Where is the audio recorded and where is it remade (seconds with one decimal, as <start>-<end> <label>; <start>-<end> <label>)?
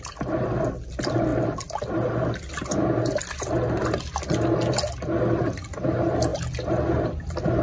0.0-7.6 recorded